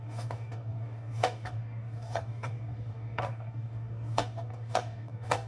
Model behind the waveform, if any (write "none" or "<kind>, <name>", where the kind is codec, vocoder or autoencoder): codec, DAC